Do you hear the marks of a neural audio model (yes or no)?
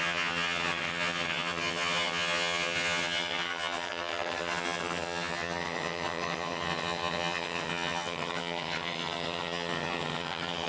yes